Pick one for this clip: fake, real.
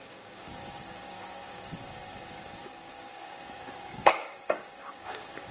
fake